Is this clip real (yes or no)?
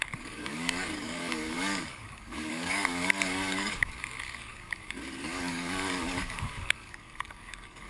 no